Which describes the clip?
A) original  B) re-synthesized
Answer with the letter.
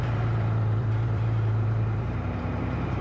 B